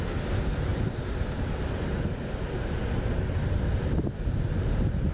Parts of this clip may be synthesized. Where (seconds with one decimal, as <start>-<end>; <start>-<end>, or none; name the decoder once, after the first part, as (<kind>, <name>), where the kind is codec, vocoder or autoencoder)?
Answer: none